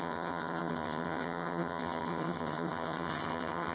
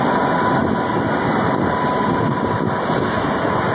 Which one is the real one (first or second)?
second